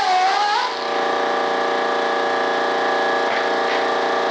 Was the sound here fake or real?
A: real